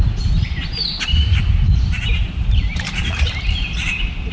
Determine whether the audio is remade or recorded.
remade